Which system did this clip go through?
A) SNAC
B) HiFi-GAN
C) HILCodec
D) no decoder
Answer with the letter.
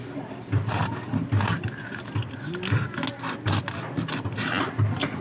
D